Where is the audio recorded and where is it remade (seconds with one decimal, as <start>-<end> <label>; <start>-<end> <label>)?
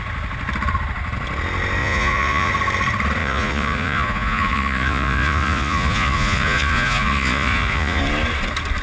0.0-1.8 recorded; 1.8-2.5 remade; 2.5-3.2 recorded; 3.2-8.0 remade; 8.0-8.8 recorded